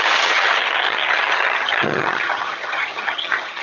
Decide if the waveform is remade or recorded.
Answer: remade